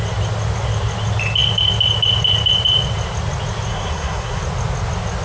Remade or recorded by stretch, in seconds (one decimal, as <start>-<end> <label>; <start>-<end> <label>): 0.0-3.7 recorded; 3.7-4.4 remade; 4.4-5.2 recorded